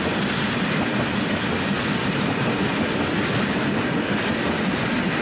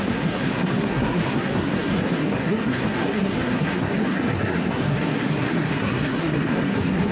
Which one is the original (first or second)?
first